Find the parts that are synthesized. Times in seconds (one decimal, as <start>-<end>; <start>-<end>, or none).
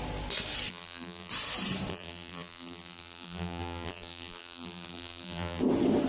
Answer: 0.7-1.3; 1.9-5.6